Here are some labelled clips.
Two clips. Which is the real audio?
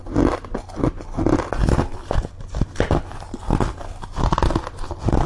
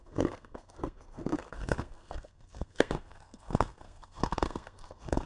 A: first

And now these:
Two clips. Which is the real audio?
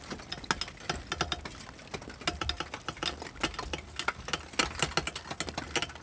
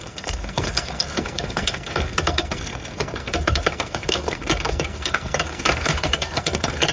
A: first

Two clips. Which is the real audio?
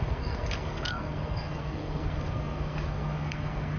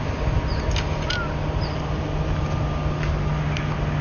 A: second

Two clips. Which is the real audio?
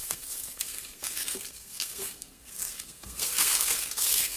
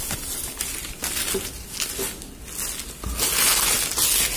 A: second